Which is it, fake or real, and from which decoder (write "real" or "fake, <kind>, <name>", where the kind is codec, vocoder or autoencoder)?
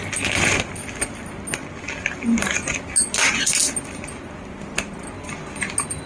real